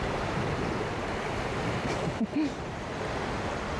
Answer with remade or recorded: recorded